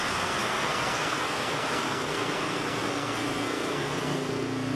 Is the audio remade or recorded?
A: remade